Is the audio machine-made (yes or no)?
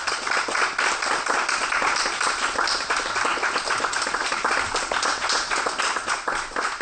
no